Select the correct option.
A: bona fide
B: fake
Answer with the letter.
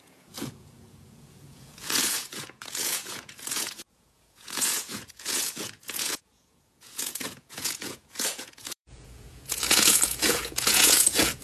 B